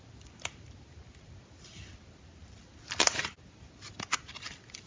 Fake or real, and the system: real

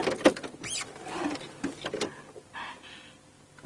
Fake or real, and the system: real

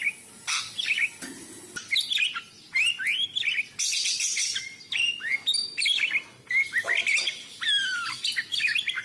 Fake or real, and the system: real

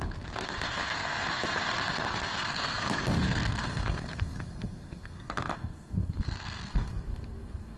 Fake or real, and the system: fake, codec, SNAC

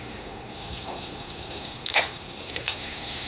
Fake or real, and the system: fake, codec, SNAC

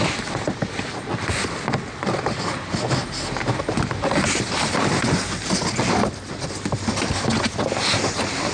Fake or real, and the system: real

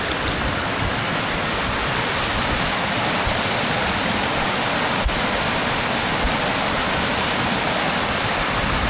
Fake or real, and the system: real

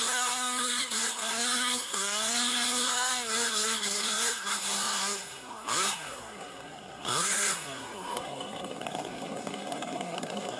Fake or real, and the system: fake, codec, SNAC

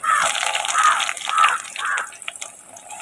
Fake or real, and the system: real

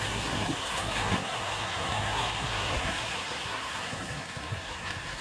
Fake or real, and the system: fake, codec, SNAC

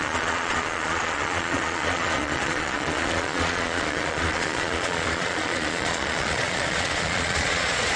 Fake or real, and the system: fake, vocoder, Vocos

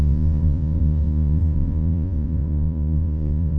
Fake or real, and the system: fake, vocoder, Vocos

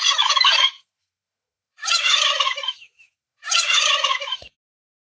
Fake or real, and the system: fake, autoencoder, DAC-VAE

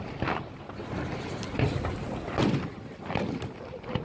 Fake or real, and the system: real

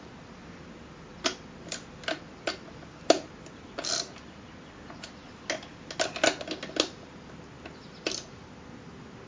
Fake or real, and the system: real